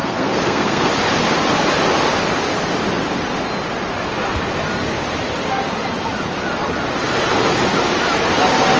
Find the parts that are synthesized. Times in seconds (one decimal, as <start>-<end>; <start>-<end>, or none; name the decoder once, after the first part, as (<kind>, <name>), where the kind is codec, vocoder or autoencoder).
0.0-0.9 (codec, SNAC)